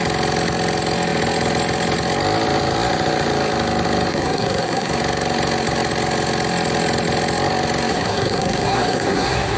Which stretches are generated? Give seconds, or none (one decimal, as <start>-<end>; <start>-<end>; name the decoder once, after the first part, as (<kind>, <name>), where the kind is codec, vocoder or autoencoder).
4.1-4.9 (codec, SNAC); 7.9-9.6